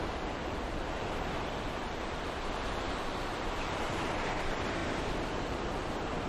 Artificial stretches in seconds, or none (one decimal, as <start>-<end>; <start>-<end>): 0.0-6.3